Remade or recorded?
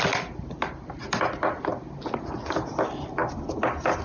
recorded